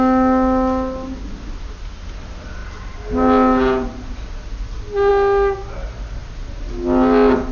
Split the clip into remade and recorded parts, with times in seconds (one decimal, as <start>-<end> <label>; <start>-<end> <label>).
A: 0.0-7.5 recorded